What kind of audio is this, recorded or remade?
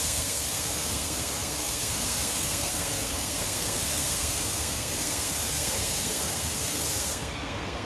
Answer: remade